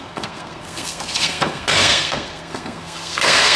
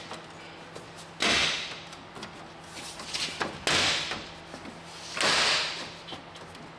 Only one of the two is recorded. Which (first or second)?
second